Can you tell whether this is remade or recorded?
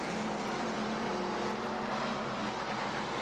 recorded